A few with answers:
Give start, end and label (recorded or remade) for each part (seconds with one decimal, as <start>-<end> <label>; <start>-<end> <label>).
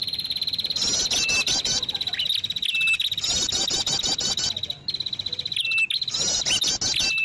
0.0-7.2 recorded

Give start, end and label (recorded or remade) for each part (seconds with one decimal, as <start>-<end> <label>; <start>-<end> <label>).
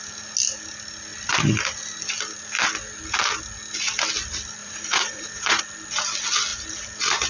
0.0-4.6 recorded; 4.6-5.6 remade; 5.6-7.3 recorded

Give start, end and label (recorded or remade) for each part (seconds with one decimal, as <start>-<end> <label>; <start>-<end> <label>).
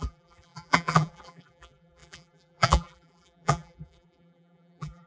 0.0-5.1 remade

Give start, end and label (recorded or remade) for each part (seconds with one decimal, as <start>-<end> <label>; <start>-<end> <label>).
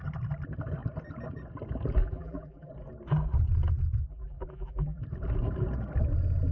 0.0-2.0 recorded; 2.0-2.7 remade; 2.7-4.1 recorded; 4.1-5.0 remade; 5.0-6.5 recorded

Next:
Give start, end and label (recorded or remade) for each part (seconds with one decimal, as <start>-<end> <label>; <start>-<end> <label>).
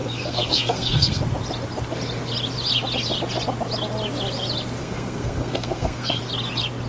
0.0-1.2 remade; 1.2-4.8 recorded; 4.8-6.2 remade; 6.2-6.9 recorded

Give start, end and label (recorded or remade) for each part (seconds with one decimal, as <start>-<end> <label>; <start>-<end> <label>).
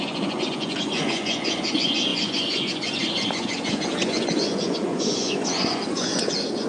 0.0-6.7 remade